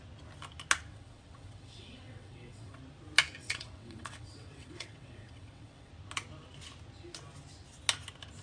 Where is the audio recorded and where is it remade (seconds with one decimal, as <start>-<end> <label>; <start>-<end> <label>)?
0.0-0.9 recorded; 0.9-2.8 remade; 2.8-3.4 recorded; 3.4-5.9 remade; 5.9-8.4 recorded

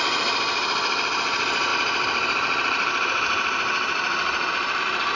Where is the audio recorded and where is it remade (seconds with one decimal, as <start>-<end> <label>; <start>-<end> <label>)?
0.0-1.7 recorded; 1.7-4.8 remade; 4.8-5.2 recorded

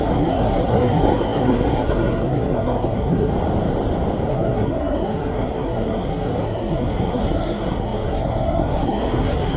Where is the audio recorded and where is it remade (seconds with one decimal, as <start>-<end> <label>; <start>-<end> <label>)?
0.0-3.3 remade; 3.3-4.3 recorded; 4.3-9.6 remade

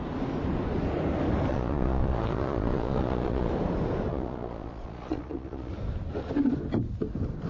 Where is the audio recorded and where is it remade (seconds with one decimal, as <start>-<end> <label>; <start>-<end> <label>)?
0.0-1.5 recorded; 1.5-3.5 remade; 3.5-4.1 recorded; 4.1-5.7 remade; 5.7-7.5 recorded